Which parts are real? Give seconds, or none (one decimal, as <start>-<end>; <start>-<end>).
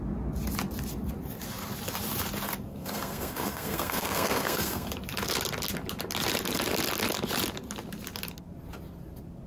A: 0.0-2.7; 4.9-9.5